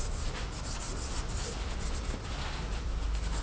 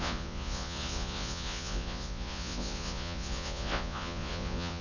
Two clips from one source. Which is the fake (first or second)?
second